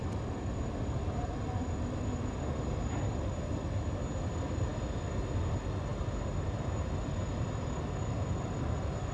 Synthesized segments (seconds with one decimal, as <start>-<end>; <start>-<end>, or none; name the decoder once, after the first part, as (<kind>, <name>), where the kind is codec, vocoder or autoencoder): none